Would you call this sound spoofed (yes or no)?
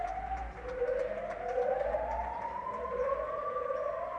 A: no